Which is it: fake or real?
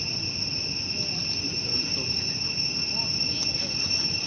real